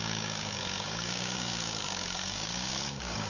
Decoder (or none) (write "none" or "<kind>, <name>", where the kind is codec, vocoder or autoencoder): codec, DAC